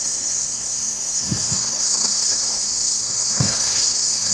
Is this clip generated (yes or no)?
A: yes